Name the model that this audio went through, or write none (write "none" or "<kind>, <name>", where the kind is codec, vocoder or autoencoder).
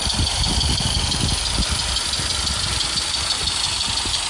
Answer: none